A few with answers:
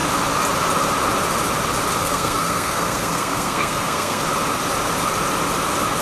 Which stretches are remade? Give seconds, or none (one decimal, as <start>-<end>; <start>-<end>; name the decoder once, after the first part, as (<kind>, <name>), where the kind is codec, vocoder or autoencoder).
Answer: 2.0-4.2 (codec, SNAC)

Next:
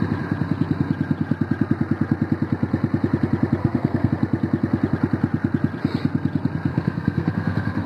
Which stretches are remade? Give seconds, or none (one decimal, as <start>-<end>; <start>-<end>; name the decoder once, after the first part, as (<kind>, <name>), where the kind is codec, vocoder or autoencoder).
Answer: 3.6-4.1 (codec, SNAC); 6.7-7.9

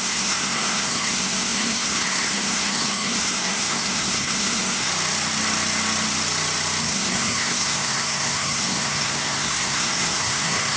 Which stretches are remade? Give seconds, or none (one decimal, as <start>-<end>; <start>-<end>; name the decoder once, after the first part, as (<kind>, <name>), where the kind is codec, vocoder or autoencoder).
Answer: 0.0-4.9 (codec, SNAC); 6.8-10.8

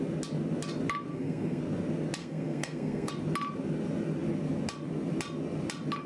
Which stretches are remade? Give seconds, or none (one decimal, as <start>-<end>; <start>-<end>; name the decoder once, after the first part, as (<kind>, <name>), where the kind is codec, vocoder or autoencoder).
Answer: 1.1-1.6 (codec, SNAC); 2.2-3.1

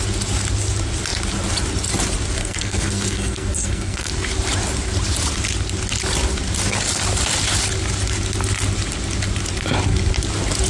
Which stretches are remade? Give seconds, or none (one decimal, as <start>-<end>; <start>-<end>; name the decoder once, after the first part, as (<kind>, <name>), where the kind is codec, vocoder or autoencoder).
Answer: 2.4-4.1 (codec, SNAC)

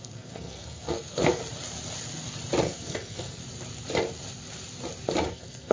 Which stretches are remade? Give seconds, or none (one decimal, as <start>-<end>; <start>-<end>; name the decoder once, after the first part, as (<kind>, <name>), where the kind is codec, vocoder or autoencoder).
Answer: 0.0-1.4 (codec, SNAC); 2.6-3.4; 5.3-5.7